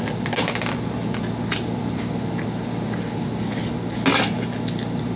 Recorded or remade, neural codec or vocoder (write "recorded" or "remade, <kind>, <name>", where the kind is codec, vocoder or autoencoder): recorded